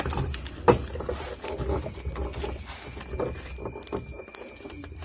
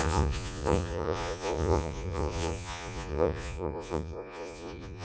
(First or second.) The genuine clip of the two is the first